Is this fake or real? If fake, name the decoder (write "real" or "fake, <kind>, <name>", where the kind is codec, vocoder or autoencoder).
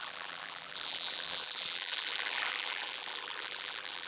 fake, vocoder, BigVGAN v2